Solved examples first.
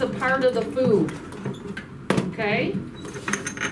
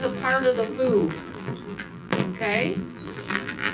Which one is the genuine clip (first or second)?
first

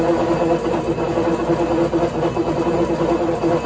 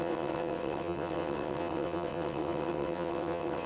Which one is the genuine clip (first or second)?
first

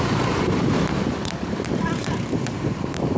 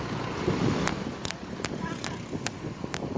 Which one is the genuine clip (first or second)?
second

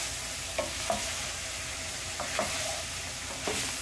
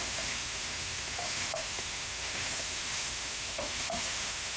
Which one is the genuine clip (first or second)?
first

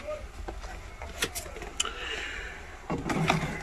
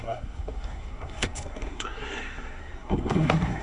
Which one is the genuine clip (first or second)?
first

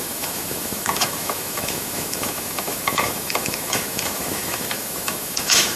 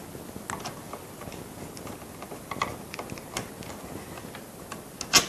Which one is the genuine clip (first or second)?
second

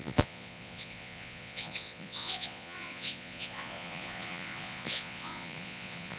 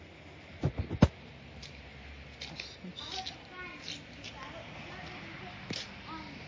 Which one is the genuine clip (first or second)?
second